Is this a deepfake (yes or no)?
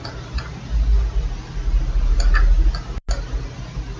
no